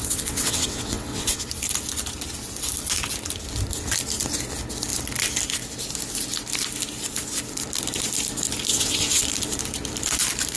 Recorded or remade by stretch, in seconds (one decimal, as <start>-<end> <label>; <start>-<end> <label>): 0.0-1.5 remade; 1.5-8.7 recorded; 8.7-9.2 remade; 9.2-10.6 recorded